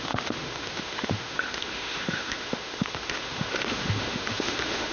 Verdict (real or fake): fake